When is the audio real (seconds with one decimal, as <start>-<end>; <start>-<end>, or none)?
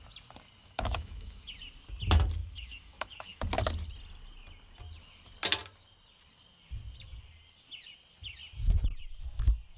0.0-0.6; 1.5-2.4; 3.4-9.8